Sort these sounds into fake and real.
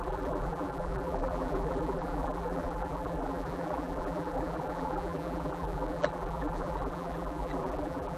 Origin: fake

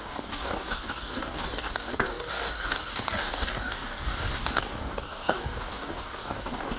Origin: fake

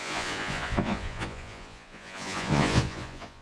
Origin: fake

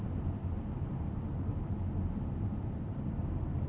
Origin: real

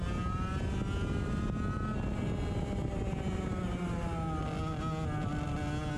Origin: real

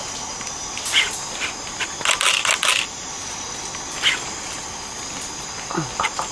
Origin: real